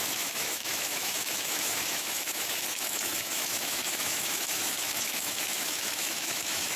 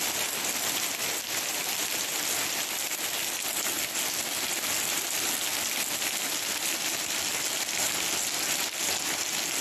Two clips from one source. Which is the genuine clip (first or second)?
second